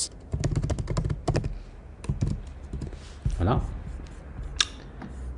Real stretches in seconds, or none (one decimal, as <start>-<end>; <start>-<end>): 0.0-5.4